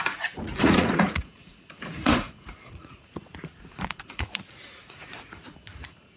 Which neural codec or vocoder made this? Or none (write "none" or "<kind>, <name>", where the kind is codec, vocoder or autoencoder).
vocoder, Vocos